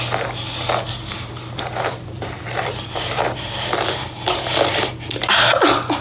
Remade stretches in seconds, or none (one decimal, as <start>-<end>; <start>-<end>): 1.3-4.9